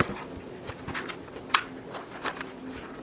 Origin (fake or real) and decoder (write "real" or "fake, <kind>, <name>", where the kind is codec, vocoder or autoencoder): real